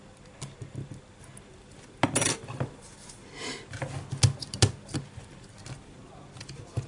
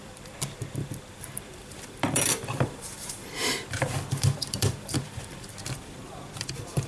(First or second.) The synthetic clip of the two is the second